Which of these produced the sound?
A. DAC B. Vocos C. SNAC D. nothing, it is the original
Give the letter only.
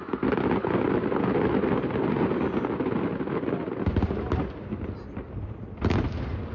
D